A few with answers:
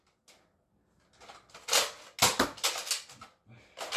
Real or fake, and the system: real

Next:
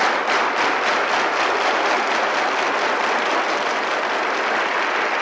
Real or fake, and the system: real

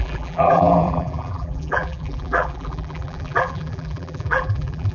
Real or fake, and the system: fake, vocoder, BigVGAN v2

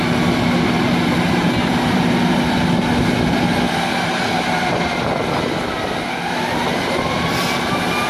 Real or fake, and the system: real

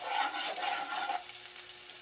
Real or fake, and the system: fake, vocoder, BigVGAN v2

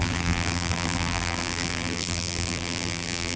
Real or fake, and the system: fake, vocoder, BigVGAN v2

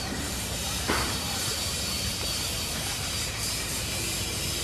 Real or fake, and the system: fake, vocoder, BigVGAN v2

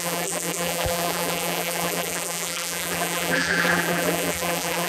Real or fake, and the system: fake, vocoder, BigVGAN v2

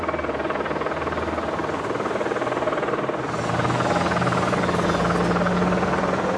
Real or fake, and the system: real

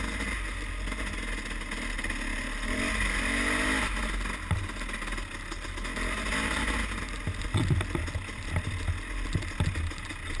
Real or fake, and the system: real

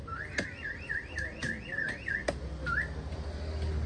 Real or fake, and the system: real